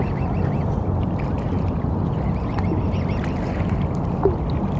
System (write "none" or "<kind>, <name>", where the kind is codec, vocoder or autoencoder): none